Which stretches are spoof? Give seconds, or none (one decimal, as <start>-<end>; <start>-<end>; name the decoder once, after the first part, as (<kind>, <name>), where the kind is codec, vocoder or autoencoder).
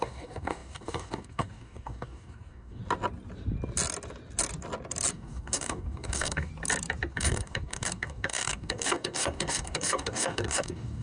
0.0-2.8 (codec, DAC); 5.1-6.5; 7.1-11.0